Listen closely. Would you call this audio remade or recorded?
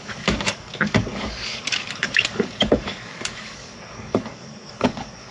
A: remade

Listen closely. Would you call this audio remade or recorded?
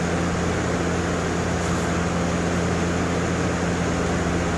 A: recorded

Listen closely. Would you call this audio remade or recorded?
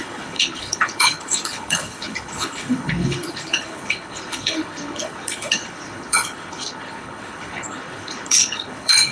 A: remade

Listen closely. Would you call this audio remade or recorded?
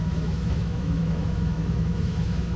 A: remade